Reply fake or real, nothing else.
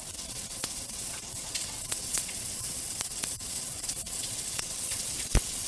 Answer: fake